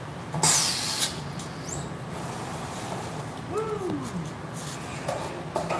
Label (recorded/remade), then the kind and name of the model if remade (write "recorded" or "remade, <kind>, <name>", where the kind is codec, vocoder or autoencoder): recorded